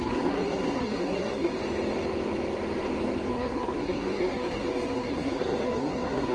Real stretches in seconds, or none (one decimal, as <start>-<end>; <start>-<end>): 1.6-3.3